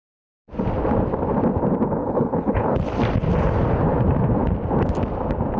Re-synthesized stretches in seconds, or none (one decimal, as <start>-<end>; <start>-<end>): 2.0-2.8